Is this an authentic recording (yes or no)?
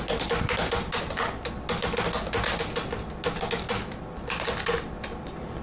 yes